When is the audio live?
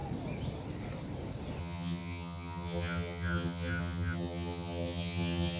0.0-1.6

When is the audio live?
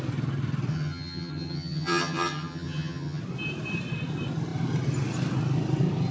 0.0-0.7; 3.2-6.1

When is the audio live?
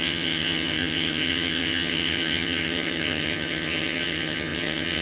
none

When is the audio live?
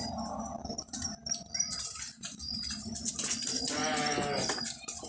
0.0-5.1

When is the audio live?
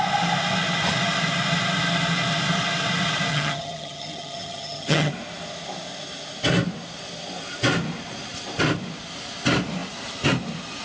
0.0-3.3; 5.1-10.8